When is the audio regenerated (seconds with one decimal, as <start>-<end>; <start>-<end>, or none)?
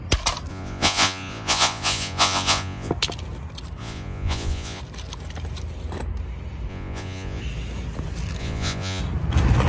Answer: 0.5-2.9; 3.8-4.8; 6.7-7.4; 8.4-9.0